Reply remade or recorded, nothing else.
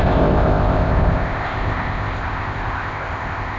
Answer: remade